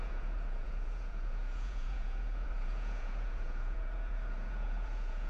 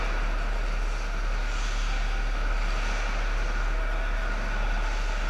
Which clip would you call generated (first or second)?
first